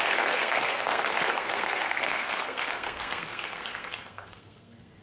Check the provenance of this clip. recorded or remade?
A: remade